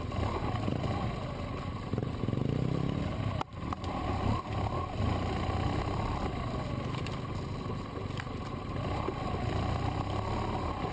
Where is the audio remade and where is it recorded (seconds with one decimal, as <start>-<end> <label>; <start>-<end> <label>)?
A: 0.0-10.9 recorded